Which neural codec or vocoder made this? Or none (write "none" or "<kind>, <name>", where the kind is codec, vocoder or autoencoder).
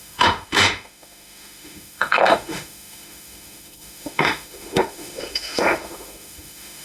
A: autoencoder, DAC-VAE